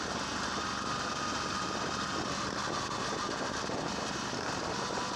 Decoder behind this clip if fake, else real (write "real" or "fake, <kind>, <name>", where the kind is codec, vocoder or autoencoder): real